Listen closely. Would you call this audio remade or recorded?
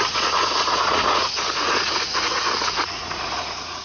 remade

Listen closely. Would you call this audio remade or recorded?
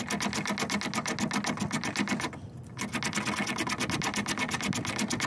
recorded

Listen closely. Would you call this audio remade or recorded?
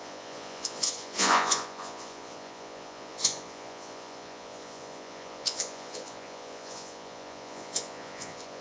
remade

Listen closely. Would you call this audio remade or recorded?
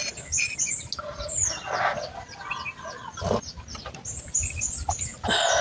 recorded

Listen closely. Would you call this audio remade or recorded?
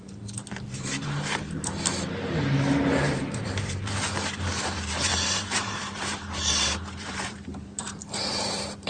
remade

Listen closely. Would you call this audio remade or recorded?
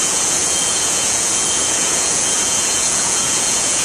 remade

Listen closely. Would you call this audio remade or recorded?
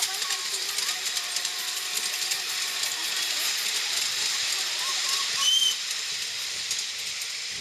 recorded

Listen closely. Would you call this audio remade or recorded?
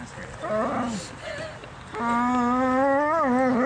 recorded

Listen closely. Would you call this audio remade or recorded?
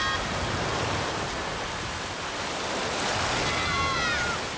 recorded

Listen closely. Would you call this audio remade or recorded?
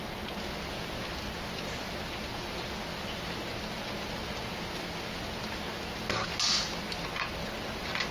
recorded